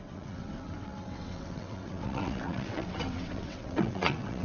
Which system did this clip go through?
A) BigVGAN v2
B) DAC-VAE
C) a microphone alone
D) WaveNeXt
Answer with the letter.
D